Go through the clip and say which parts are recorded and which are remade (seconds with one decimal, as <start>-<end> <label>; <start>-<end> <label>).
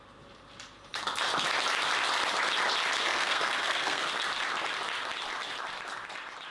0.0-3.1 recorded; 3.1-4.1 remade; 4.1-6.5 recorded